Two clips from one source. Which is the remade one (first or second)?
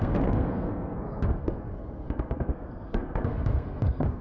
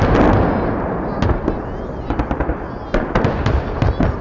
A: first